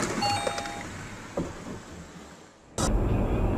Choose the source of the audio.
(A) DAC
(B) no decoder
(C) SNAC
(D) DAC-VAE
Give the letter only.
B